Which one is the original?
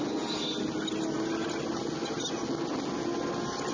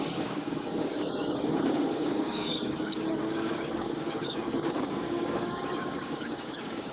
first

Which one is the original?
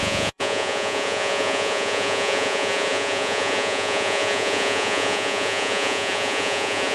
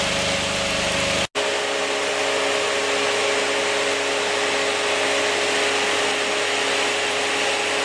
second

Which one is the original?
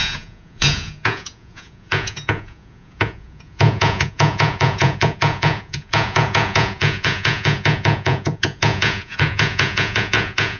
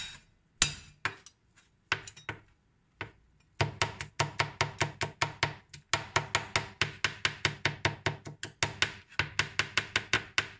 second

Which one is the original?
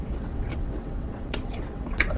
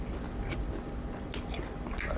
second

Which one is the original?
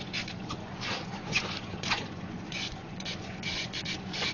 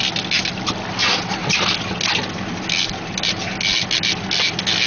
second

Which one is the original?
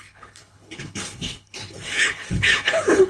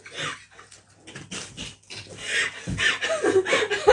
second